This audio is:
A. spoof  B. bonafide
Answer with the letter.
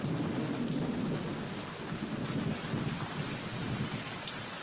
B